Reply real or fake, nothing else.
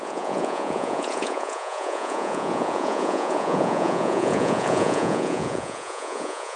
fake